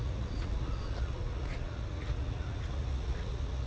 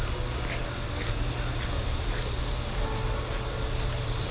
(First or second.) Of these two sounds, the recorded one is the second